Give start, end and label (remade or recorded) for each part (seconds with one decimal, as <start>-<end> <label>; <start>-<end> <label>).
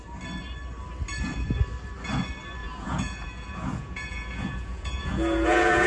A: 0.0-2.6 recorded; 2.6-5.9 remade